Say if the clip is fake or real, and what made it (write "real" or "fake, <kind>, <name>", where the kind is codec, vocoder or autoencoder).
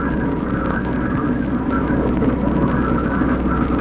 real